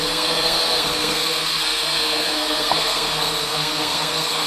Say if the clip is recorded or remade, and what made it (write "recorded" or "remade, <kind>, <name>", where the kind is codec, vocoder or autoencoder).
remade, codec, SNAC